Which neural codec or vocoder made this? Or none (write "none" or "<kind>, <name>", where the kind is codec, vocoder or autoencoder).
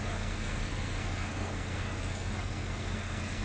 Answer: codec, SNAC